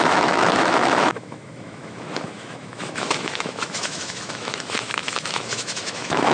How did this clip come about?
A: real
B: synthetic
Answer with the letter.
B